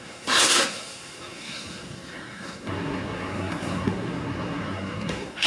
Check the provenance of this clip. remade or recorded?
remade